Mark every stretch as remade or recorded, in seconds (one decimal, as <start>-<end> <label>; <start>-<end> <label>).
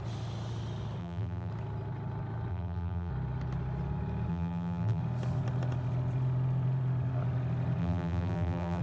0.0-1.0 recorded; 1.0-1.5 remade; 1.5-2.5 recorded; 2.5-3.1 remade; 3.1-4.3 recorded; 4.3-5.0 remade; 5.0-7.8 recorded; 7.8-8.8 remade